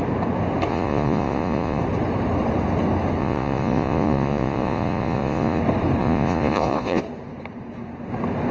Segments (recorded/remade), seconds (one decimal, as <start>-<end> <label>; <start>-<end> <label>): 0.0-0.7 recorded; 0.7-1.8 remade; 1.8-3.2 recorded; 3.2-5.6 remade; 5.6-6.0 recorded; 6.0-7.0 remade; 7.0-8.5 recorded